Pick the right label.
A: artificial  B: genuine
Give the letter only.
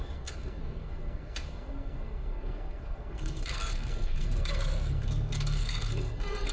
A